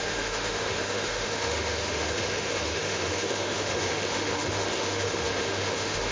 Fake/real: fake